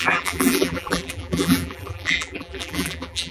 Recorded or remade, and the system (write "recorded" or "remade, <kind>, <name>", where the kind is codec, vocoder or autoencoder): remade, vocoder, BigVGAN v2